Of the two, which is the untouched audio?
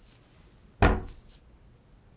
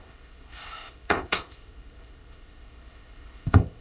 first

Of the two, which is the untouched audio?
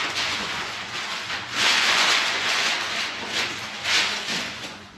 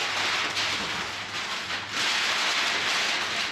second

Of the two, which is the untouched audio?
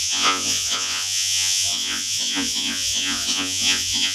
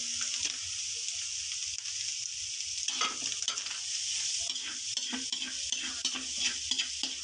second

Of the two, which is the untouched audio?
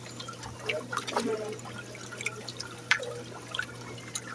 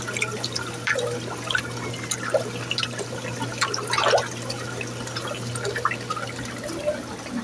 second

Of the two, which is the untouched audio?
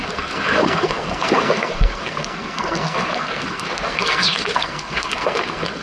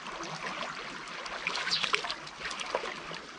second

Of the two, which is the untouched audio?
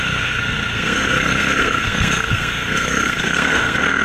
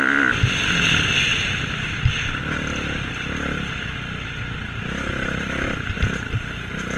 second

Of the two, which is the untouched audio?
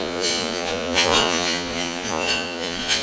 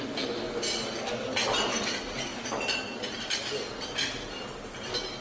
second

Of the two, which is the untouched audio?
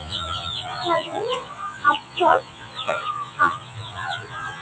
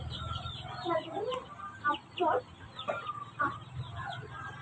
second